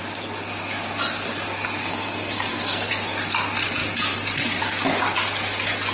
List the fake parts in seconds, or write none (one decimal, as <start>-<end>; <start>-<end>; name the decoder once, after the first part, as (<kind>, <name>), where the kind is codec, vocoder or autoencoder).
1.9-2.9 (codec, SNAC)